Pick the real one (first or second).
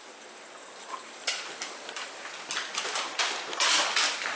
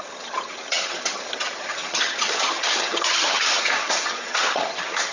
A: first